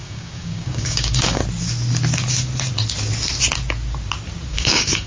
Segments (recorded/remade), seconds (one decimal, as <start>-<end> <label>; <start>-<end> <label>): 0.0-1.4 remade; 1.4-4.5 recorded; 4.5-5.1 remade